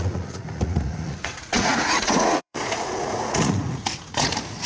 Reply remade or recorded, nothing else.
remade